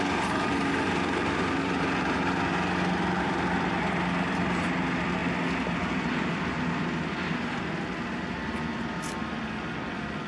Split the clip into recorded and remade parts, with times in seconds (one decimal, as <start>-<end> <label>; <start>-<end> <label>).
0.0-10.3 recorded